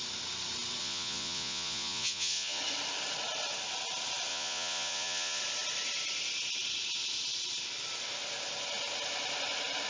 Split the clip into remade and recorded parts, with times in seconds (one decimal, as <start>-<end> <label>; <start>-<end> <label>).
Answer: 0.0-0.8 recorded; 0.8-2.6 remade; 2.6-4.3 recorded; 4.3-5.4 remade; 5.4-9.9 recorded